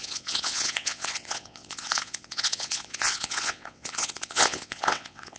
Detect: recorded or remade remade